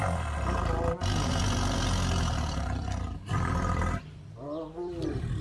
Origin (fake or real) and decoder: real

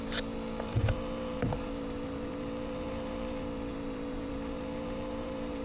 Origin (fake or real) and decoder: fake, vocoder, BigVGAN v2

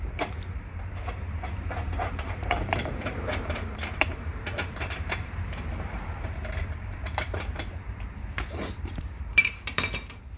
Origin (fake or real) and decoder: fake, vocoder, BigVGAN v2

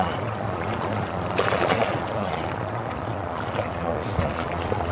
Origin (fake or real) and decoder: fake, vocoder, Vocos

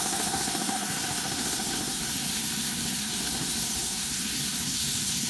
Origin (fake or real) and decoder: fake, codec, SNAC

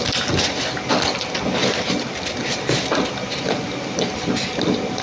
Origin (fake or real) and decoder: real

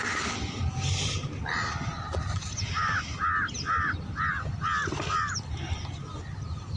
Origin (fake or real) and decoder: fake, vocoder, BigVGAN v2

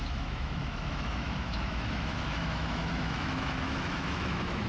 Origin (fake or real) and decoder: fake, autoencoder, DAC-VAE